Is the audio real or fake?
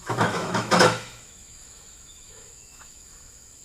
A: fake